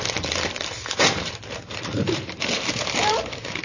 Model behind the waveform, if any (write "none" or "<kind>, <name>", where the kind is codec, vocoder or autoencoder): vocoder, BigVGAN v2